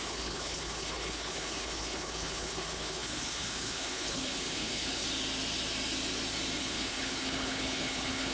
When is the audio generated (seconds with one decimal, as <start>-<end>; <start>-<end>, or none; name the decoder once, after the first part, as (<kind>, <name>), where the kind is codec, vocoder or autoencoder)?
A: 0.0-5.0 (codec, HILCodec); 6.6-8.3

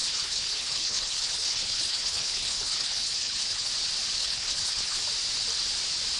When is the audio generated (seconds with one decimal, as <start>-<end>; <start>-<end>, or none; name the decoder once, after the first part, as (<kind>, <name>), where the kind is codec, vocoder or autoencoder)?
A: 0.0-3.7 (codec, HILCodec); 4.2-5.0

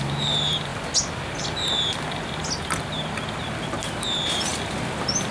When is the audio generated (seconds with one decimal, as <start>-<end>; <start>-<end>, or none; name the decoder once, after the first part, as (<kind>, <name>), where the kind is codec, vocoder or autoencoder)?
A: none

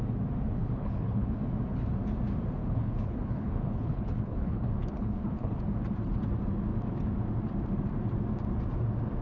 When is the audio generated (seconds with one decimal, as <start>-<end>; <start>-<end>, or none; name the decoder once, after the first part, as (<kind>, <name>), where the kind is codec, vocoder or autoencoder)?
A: 0.6-1.4 (codec, HILCodec); 2.6-5.6

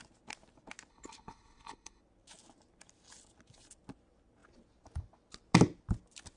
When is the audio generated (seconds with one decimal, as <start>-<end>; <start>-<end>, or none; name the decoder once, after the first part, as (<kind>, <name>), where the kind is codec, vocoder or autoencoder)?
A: 0.9-2.0 (codec, HILCodec)